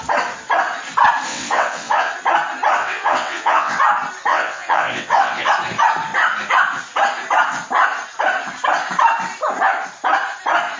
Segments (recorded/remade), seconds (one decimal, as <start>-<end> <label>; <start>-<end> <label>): 0.0-1.3 recorded; 1.3-2.1 remade; 2.1-2.8 recorded; 2.8-3.8 remade; 3.8-4.3 recorded; 4.3-5.5 remade; 5.5-10.8 recorded